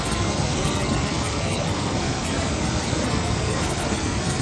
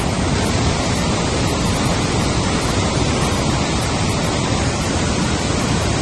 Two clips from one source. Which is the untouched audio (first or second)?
second